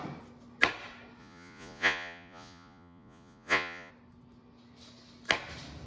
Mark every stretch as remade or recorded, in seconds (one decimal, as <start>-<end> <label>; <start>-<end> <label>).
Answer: 0.0-1.2 recorded; 1.2-3.9 remade; 3.9-5.9 recorded